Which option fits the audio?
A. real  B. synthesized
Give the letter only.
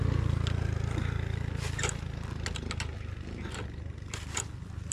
A